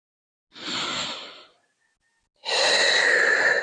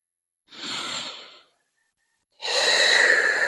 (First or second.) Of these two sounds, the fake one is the second